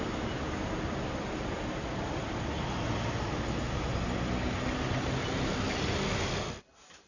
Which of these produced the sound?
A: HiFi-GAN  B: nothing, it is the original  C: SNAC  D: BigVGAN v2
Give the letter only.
B